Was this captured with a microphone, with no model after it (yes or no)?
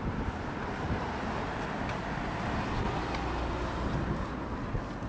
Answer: yes